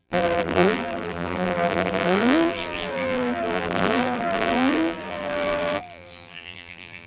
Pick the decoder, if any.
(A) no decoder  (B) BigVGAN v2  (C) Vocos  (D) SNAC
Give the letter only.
B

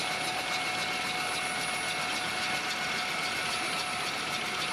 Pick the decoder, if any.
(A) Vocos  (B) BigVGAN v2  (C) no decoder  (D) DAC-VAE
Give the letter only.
C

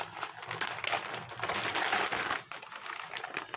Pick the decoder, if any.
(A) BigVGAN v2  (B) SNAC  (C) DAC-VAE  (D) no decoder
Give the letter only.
D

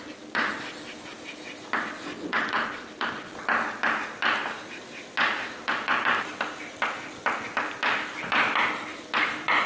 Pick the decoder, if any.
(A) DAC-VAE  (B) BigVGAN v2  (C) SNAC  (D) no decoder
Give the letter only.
D